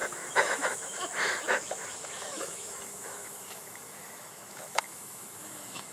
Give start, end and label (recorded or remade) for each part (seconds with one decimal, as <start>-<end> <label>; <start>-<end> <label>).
0.0-5.9 remade